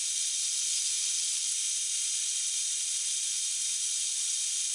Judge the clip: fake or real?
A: real